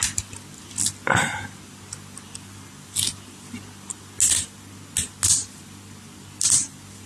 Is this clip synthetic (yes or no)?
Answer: no